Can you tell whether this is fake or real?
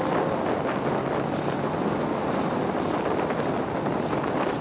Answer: real